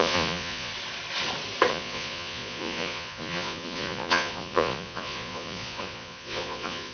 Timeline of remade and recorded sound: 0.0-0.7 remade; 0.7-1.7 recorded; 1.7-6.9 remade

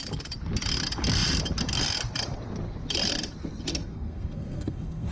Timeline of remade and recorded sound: 0.0-3.7 recorded; 3.7-5.1 remade